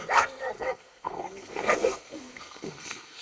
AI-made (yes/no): yes